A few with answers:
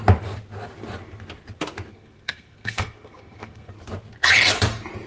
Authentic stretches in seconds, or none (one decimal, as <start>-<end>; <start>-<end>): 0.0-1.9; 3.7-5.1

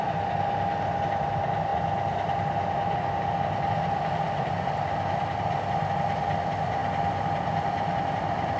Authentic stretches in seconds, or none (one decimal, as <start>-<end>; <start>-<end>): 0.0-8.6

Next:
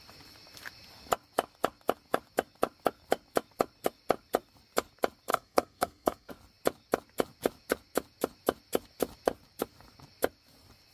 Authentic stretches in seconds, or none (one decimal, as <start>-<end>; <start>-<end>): 0.0-5.3; 6.3-10.9

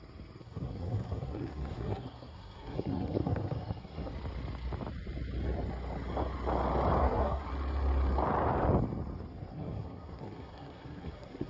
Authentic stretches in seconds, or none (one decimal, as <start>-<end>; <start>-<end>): 0.0-0.4; 4.1-7.0; 7.5-9.5